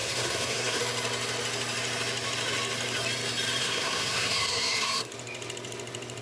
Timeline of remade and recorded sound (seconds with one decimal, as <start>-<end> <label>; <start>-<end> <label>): 0.0-0.8 remade; 0.8-3.6 recorded; 3.6-5.1 remade; 5.1-6.2 recorded